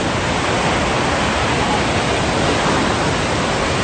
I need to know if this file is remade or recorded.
recorded